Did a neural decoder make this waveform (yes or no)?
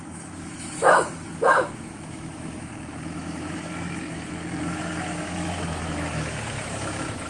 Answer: yes